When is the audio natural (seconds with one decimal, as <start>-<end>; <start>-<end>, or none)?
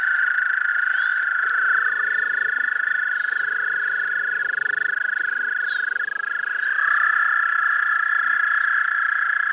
0.0-1.1; 4.4-9.5